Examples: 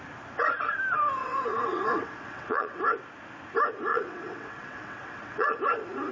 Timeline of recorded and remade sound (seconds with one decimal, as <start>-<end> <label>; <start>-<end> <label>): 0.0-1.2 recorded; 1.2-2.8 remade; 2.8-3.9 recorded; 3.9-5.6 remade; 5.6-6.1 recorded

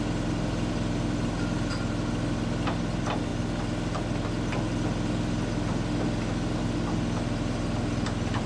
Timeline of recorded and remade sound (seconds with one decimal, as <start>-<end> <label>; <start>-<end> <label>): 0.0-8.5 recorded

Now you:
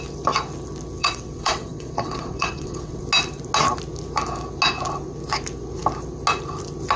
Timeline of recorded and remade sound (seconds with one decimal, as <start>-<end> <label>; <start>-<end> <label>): 0.0-1.0 recorded; 1.0-3.0 remade; 3.0-7.0 recorded

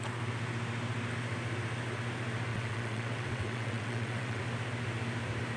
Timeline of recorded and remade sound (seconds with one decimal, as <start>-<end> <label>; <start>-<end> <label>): 0.0-2.5 recorded; 2.5-4.4 remade; 4.4-5.6 recorded